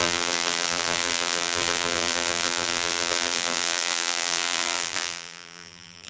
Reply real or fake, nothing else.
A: fake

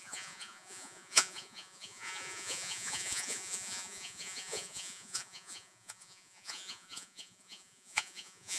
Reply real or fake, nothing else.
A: fake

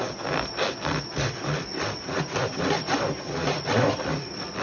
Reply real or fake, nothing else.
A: real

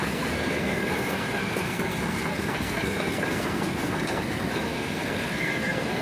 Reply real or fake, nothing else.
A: fake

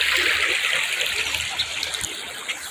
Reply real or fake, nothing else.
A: real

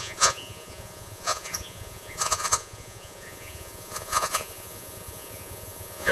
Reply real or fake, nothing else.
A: fake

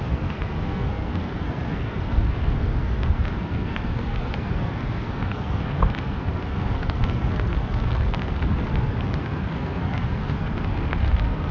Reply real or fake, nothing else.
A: fake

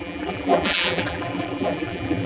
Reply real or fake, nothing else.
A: fake